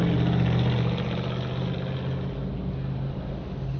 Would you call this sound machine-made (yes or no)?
no